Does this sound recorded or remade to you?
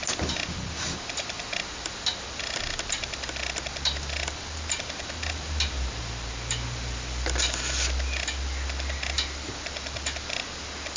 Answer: recorded